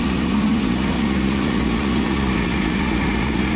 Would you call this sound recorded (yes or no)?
no